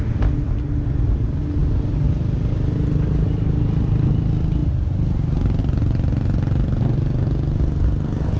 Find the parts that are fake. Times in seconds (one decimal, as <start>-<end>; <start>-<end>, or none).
none